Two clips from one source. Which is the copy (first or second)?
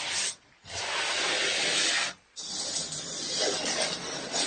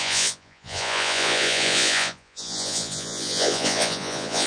second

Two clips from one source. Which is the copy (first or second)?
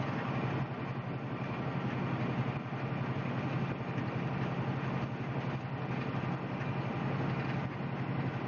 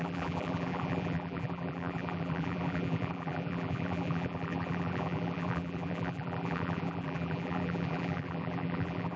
second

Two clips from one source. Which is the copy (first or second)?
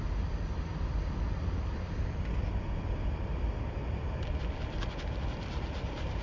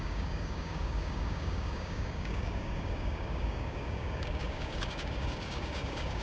second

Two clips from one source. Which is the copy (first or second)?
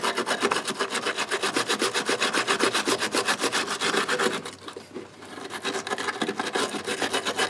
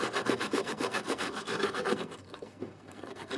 second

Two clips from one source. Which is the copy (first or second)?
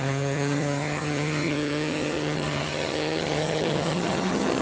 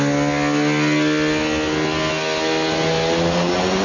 first